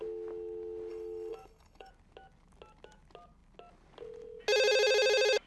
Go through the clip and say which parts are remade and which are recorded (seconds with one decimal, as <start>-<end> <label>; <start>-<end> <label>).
0.0-0.9 recorded; 0.9-1.9 remade; 1.9-5.5 recorded